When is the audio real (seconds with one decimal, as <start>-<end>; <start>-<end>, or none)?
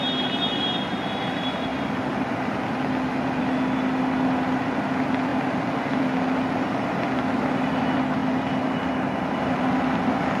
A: 0.0-10.4